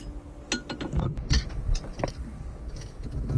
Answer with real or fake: real